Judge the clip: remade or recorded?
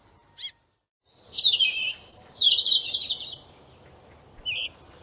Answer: recorded